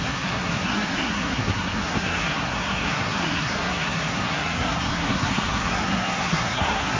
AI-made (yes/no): yes